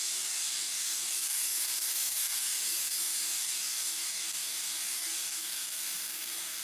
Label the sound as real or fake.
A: fake